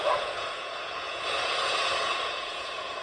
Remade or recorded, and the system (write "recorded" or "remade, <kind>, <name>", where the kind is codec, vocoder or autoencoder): remade, vocoder, Vocos